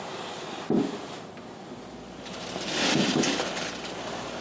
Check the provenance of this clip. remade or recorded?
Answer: recorded